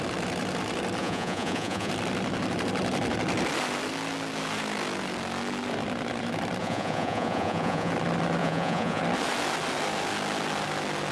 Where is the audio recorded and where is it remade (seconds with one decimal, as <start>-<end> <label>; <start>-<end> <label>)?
0.0-1.0 recorded; 1.0-1.9 remade; 1.9-6.6 recorded; 6.6-7.9 remade; 7.9-8.4 recorded; 8.4-9.0 remade; 9.0-11.1 recorded